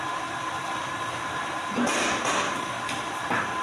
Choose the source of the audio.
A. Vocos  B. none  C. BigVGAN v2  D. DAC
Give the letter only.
B